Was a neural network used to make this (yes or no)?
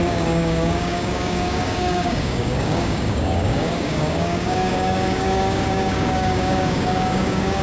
yes